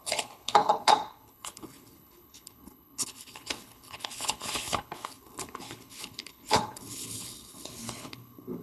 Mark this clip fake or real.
fake